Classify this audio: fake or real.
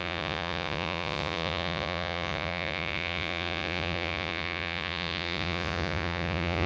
fake